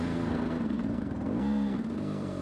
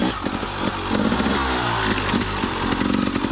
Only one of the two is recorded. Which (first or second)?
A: second